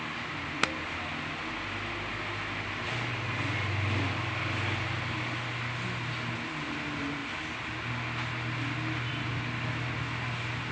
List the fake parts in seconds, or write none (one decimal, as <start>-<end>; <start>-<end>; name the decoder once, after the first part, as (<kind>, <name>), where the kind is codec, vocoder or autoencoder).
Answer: none